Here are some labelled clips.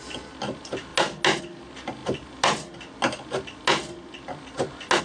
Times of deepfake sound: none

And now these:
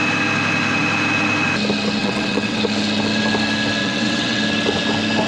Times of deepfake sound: 2.0-2.6 (vocoder, WaveNeXt); 3.8-4.4

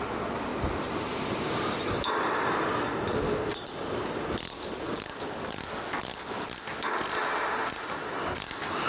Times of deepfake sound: none